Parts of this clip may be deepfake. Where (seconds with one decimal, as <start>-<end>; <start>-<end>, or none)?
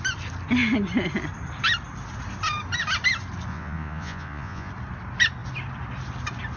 3.5-4.7